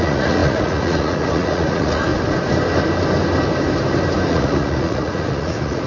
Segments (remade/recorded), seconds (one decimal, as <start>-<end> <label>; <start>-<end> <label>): 0.0-2.1 remade; 2.1-4.3 recorded; 4.3-5.9 remade